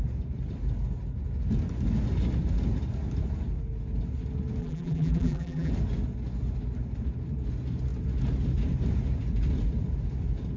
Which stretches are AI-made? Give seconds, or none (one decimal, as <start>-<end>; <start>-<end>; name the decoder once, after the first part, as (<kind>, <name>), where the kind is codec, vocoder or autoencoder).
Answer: 4.6-5.7 (vocoder, BigVGAN v2)